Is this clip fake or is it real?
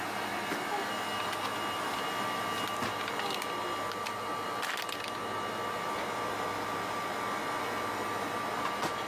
real